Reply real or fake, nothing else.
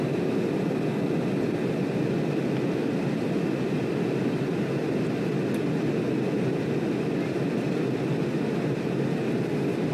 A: real